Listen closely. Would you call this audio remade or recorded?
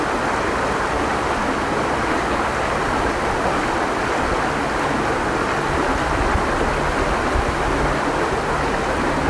recorded